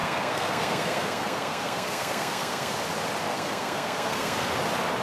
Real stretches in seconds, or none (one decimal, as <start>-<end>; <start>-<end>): 2.7-3.3; 4.5-5.0